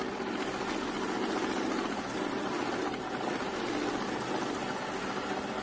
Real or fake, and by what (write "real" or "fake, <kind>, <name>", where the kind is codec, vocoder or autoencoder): real